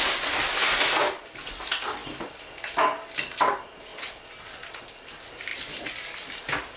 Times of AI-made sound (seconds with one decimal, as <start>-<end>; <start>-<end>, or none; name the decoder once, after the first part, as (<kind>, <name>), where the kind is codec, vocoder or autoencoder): none